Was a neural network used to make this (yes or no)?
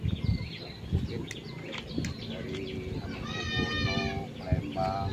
no